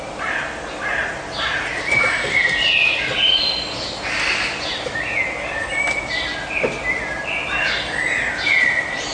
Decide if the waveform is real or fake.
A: real